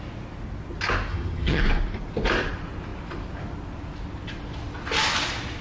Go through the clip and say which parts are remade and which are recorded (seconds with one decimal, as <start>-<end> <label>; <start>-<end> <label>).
0.0-1.1 recorded; 1.1-1.6 remade; 1.6-5.6 recorded